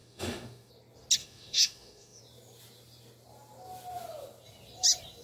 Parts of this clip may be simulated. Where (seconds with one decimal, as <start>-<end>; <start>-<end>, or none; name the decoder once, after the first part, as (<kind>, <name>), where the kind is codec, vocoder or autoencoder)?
0.0-0.7 (autoencoder, DAC-VAE); 1.2-2.2